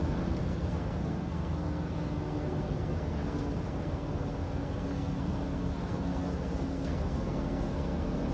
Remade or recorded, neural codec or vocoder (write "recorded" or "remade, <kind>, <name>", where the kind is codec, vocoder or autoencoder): remade, codec, SNAC